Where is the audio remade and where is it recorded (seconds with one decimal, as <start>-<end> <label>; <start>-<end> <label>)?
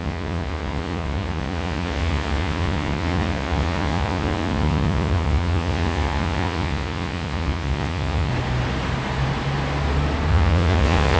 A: 0.0-8.3 remade; 8.3-10.3 recorded; 10.3-11.2 remade